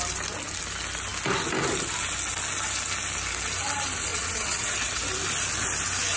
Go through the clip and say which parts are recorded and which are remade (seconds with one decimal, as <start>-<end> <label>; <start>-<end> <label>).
0.0-4.1 recorded; 4.1-5.0 remade; 5.0-6.2 recorded